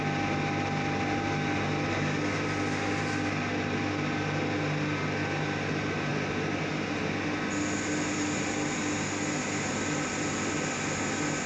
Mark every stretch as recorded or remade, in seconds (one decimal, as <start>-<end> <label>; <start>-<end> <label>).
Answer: 0.0-11.5 recorded